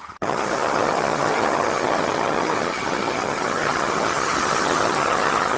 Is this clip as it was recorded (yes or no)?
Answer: no